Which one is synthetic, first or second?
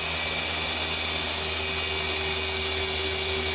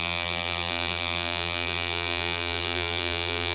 second